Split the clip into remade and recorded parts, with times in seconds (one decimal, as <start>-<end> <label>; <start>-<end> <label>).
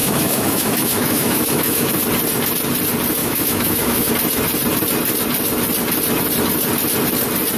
0.0-1.9 remade; 1.9-3.2 recorded; 3.2-4.1 remade; 4.1-7.6 recorded